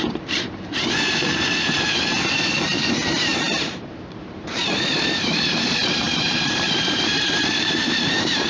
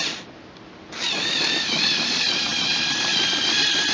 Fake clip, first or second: first